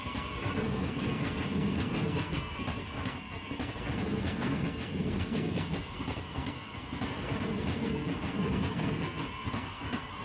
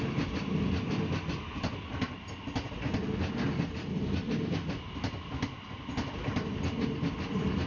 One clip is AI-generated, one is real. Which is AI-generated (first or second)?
first